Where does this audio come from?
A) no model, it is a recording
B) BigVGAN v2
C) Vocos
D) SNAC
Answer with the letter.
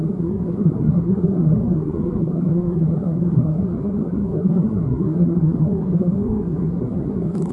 D